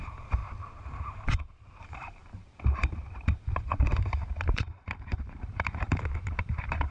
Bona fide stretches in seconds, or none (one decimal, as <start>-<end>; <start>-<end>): 0.4-1.3